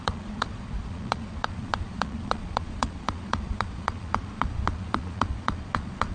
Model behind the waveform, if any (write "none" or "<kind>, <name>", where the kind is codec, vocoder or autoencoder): vocoder, Vocos